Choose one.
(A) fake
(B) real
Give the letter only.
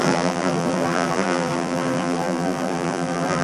A